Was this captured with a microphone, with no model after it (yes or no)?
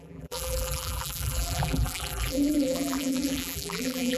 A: no